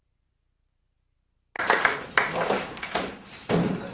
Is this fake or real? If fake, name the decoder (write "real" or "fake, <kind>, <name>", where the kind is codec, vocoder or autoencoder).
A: real